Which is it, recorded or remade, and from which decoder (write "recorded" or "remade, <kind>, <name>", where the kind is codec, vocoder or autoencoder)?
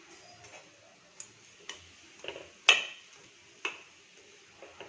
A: recorded